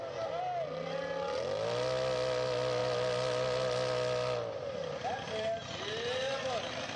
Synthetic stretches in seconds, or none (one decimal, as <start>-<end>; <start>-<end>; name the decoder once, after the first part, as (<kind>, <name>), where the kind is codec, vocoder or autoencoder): none